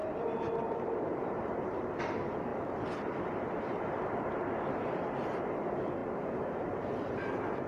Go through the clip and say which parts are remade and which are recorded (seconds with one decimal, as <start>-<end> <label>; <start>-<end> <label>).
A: 0.0-2.0 remade; 2.0-6.0 recorded; 6.0-7.2 remade; 7.2-7.7 recorded